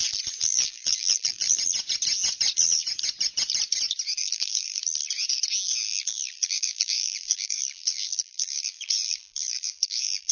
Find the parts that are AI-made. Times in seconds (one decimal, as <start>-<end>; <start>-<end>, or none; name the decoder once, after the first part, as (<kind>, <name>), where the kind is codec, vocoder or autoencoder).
0.4-1.6 (vocoder, BigVGAN v2); 4.2-4.8; 5.9-10.3